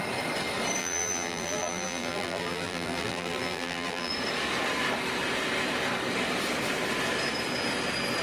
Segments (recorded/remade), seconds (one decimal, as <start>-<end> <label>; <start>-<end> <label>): 0.0-0.8 recorded; 0.8-4.1 remade; 4.1-8.2 recorded